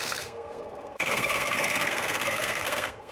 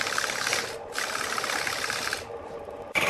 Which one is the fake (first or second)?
first